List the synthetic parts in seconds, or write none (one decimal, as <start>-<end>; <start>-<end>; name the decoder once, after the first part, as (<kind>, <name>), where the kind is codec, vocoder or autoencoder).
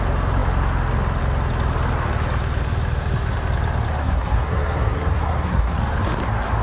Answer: 4.0-5.8 (codec, SNAC)